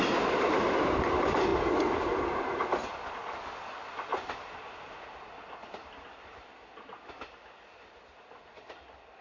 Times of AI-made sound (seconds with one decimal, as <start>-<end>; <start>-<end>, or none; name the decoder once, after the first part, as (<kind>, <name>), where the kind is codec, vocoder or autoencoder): none